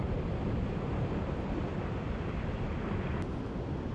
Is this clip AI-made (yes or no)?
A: no